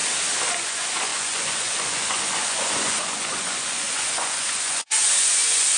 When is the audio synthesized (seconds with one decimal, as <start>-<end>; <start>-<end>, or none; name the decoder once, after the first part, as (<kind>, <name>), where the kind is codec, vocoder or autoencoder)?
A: 0.5-5.8 (vocoder, Vocos)